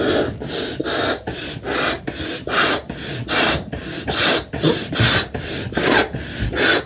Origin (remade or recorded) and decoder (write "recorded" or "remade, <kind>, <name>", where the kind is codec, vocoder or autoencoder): recorded